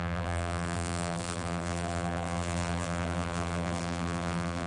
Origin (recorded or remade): remade